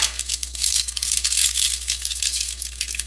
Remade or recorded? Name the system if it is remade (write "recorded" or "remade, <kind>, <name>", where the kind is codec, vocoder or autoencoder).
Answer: remade, codec, SNAC